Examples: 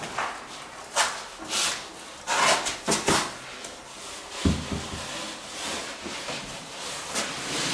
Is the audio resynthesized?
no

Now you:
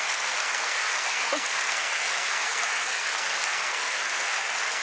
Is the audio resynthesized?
yes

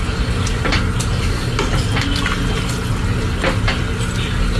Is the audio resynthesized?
no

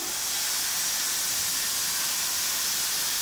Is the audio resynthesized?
no